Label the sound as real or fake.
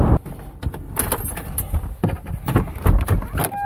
real